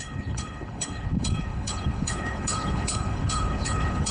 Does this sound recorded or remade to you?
remade